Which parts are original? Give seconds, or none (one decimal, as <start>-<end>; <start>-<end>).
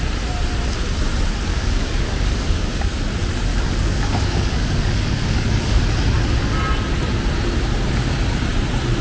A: 0.0-1.5; 3.0-3.5; 5.8-9.0